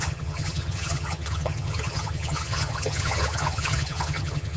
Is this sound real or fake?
fake